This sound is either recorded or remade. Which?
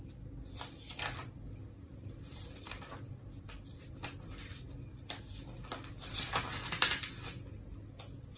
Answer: recorded